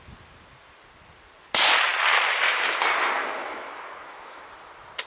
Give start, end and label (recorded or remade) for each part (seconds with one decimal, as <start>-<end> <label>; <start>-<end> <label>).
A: 0.0-3.2 recorded; 3.2-4.4 remade; 4.4-5.1 recorded